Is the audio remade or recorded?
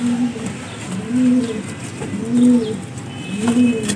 recorded